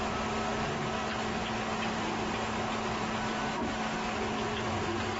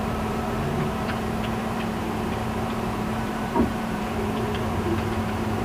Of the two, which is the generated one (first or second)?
second